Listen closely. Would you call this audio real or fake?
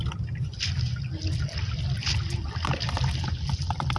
real